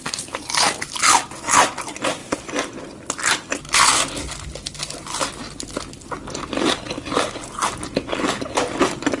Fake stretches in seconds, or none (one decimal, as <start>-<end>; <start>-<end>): none